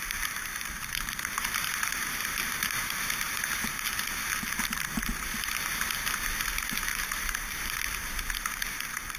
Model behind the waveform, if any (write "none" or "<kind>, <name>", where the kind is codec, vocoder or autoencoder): vocoder, BigVGAN v2